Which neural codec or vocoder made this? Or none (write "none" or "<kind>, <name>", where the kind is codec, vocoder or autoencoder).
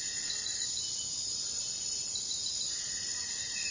none